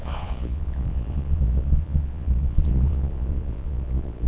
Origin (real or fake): fake